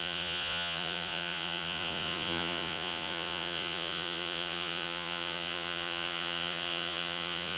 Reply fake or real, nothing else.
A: fake